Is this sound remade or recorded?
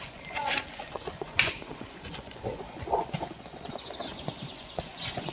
remade